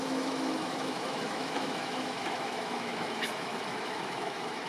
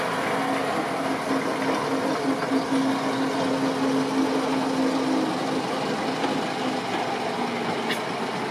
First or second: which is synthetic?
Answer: first